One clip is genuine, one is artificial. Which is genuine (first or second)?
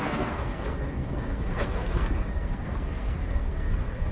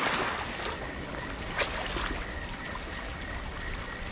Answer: second